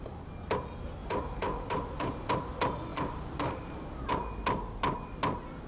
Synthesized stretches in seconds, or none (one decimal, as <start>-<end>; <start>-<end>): 1.0-2.3; 2.9-4.1